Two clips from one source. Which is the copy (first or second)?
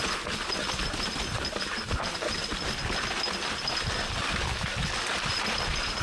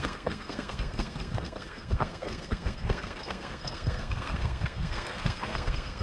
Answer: second